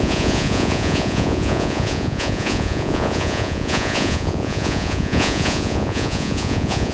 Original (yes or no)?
no